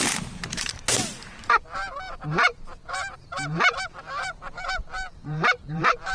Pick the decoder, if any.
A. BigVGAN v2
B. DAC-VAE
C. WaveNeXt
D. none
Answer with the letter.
A